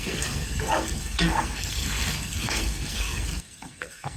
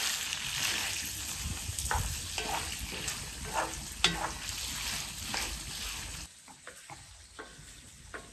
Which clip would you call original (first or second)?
second